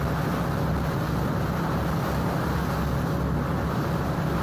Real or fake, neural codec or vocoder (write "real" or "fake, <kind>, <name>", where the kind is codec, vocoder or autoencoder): real